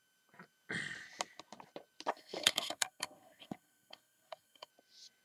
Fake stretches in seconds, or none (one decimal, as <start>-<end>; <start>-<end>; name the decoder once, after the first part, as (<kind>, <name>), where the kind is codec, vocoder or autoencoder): 2.1-4.7 (codec, SNAC)